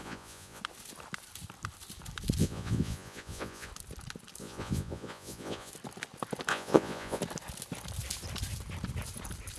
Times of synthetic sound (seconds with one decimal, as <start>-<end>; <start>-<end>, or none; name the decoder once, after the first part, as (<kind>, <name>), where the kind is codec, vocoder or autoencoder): 0.0-0.6 (vocoder, Vocos); 2.4-3.7; 4.4-5.7; 6.5-7.2